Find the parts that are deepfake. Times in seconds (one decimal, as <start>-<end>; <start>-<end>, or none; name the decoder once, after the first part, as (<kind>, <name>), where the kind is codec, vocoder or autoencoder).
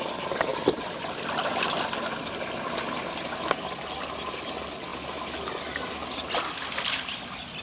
none